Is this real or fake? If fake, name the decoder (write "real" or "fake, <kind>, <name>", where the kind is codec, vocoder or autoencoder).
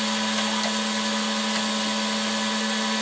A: real